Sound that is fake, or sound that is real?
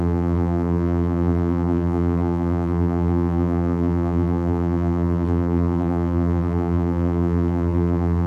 fake